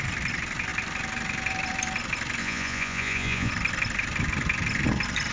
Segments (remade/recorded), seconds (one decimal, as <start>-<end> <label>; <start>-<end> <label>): 0.0-2.4 recorded; 2.4-3.5 remade; 3.5-5.3 recorded